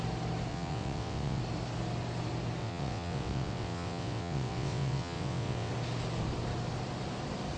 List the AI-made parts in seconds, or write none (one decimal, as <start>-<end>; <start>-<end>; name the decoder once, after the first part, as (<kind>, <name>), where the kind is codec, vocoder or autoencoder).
0.5-1.4 (vocoder, WaveNeXt); 2.6-5.7